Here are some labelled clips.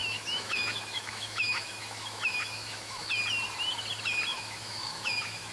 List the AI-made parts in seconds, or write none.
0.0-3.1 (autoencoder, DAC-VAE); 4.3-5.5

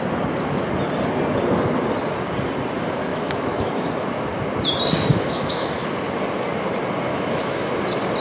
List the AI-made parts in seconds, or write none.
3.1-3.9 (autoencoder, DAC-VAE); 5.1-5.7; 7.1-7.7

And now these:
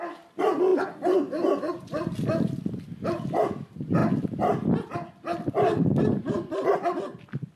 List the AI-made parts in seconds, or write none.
none